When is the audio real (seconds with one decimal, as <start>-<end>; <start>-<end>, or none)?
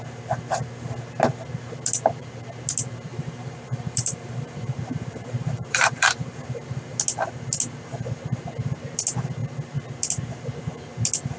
0.0-3.1; 7.0-11.4